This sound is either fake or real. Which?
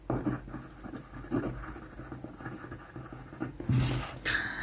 real